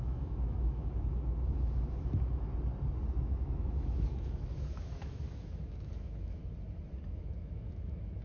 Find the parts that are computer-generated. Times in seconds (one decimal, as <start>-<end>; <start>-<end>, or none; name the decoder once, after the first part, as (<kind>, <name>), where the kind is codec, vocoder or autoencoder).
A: 0.0-2.5 (autoencoder, DAC-VAE); 3.2-6.4; 7.1-8.2